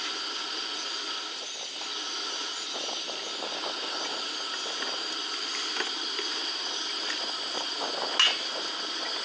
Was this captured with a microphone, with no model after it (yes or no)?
yes